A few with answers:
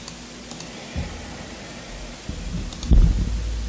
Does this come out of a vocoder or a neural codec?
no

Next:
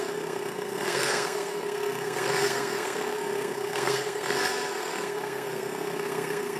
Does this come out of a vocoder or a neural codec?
yes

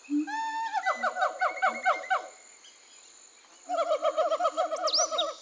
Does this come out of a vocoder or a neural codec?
no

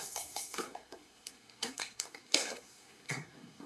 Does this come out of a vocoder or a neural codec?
yes